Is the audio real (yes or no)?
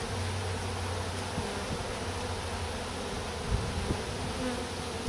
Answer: yes